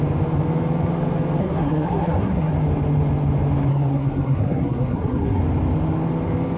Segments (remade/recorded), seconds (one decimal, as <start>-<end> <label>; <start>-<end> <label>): 0.0-1.4 recorded; 1.4-2.5 remade; 2.5-3.7 recorded; 3.7-5.4 remade; 5.4-6.6 recorded